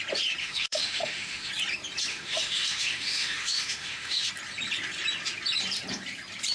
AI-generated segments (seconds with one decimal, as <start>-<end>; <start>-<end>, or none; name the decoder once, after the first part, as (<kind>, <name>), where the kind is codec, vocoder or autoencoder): 0.4-1.5 (autoencoder, DAC-VAE); 2.1-4.3